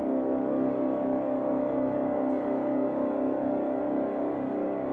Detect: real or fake fake